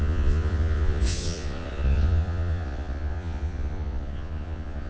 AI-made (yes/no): yes